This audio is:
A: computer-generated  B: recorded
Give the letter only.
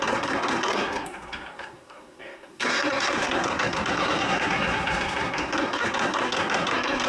A